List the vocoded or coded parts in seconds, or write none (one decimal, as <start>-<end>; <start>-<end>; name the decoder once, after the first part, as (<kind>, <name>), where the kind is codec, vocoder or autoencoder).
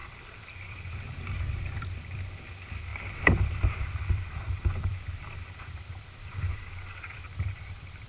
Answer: 0.0-8.1 (vocoder, BigVGAN v2)